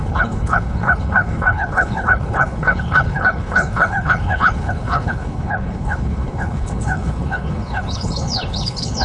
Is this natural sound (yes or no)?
no